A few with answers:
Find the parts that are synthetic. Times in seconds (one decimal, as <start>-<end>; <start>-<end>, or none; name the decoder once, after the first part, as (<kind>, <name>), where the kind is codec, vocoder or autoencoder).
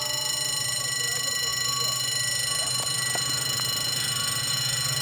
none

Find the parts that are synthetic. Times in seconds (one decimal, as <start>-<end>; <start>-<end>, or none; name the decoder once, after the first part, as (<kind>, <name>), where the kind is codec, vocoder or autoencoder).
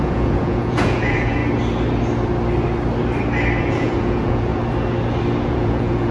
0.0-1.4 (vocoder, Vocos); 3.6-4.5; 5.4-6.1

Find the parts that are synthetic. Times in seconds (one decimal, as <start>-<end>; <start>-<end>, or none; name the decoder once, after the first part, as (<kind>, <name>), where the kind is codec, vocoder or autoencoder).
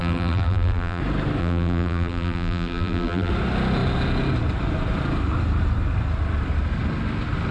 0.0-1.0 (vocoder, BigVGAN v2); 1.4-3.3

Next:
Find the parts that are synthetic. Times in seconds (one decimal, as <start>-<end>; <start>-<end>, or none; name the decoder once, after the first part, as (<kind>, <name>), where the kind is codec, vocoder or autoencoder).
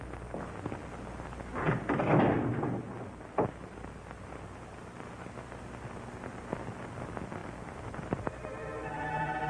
7.4-8.2 (vocoder, BigVGAN v2)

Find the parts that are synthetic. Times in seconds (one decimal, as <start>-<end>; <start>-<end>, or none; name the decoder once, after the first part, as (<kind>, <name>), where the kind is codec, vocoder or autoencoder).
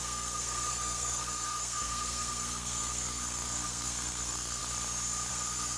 0.0-4.6 (codec, SNAC); 5.3-5.8